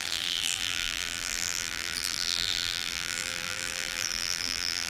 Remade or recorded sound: remade